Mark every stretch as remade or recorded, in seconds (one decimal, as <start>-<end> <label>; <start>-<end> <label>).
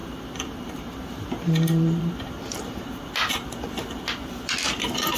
0.0-3.1 remade; 3.1-5.2 recorded